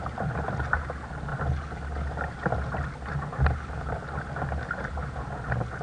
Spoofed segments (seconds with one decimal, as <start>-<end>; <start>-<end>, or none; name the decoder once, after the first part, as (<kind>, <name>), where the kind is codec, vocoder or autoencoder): none